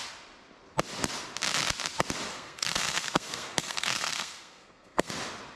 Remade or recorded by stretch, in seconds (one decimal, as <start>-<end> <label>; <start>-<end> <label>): 0.0-2.3 recorded; 2.3-5.1 remade; 5.1-5.6 recorded